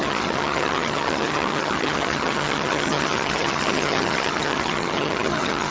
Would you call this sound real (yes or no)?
no